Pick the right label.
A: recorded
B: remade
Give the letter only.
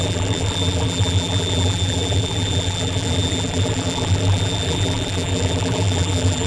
B